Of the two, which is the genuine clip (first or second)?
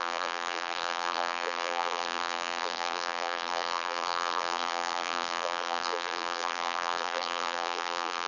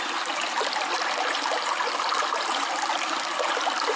second